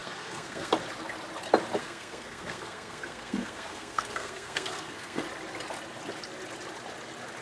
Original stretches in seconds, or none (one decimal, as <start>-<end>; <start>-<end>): 0.7-1.8; 5.2-7.4